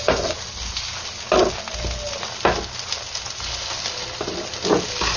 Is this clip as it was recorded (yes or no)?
yes